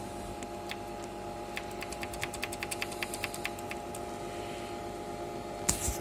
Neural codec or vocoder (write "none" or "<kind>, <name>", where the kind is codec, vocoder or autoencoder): none